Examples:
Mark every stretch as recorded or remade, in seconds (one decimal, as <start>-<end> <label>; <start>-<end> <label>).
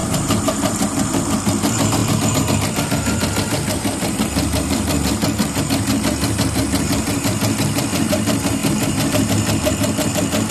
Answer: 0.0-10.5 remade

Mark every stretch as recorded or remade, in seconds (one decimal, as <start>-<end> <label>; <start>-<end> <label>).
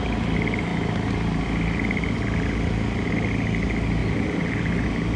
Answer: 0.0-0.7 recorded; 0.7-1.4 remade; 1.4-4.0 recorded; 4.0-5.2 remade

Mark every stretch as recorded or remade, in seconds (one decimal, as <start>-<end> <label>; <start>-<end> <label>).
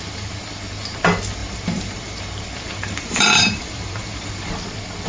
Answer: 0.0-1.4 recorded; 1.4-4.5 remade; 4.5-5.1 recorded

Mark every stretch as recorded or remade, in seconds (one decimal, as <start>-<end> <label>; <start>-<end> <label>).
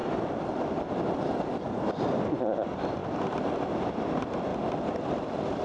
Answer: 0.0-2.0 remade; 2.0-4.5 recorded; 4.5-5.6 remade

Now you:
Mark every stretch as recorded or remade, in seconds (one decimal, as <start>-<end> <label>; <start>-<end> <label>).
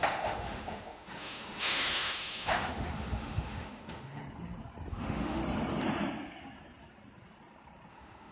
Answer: 0.0-4.2 remade; 4.2-4.9 recorded; 4.9-5.4 remade; 5.4-7.9 recorded; 7.9-8.3 remade